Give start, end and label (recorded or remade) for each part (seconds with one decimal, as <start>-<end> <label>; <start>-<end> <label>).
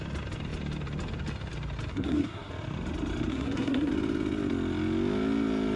0.0-1.9 recorded; 1.9-2.5 remade; 2.5-3.3 recorded; 3.3-3.9 remade; 3.9-5.8 recorded